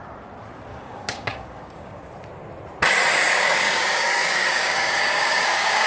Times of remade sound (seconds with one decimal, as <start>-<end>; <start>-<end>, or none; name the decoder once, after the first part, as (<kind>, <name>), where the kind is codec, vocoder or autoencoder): 0.7-2.1 (codec, DAC); 3.1-5.9

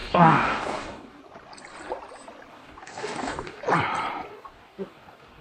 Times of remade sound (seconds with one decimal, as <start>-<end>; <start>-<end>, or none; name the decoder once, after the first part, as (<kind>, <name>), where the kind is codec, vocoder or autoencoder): 0.0-1.2 (codec, DAC); 2.5-3.6; 4.3-5.4